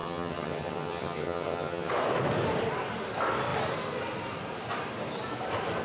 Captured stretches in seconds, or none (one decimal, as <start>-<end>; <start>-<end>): 1.9-5.8